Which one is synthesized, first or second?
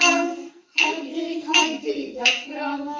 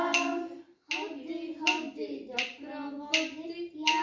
first